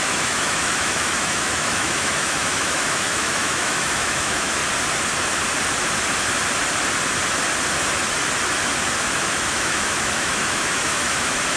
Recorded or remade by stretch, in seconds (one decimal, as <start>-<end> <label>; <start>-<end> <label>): 0.0-4.6 remade; 4.6-9.0 recorded; 9.0-11.6 remade